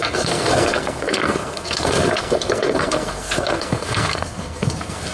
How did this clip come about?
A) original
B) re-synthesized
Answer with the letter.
B